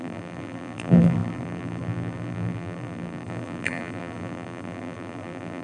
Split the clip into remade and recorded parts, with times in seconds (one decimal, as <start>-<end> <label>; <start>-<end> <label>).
0.0-5.6 remade

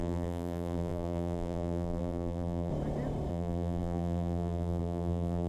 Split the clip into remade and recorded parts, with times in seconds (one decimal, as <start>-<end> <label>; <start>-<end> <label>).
0.0-2.7 remade; 2.7-3.3 recorded; 3.3-5.5 remade

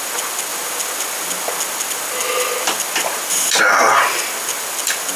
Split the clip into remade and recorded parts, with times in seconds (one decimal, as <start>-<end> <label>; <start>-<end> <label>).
0.0-5.2 recorded